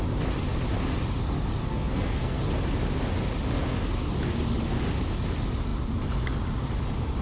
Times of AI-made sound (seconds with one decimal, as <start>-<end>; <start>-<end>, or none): 1.6-2.4